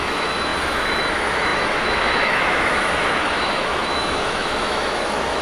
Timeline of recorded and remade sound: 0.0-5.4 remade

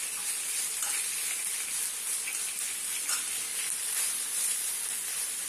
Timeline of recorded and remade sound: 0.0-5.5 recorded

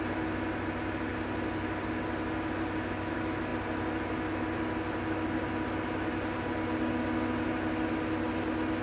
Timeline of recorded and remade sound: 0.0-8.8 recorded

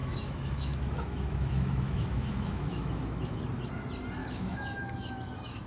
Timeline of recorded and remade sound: 0.0-3.4 remade; 3.4-4.2 recorded; 4.2-5.1 remade; 5.1-5.7 recorded

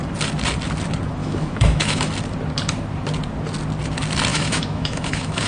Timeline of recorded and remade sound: 0.0-1.2 recorded; 1.2-2.1 remade; 2.1-4.3 recorded; 4.3-5.5 remade